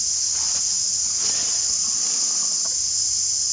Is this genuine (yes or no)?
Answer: yes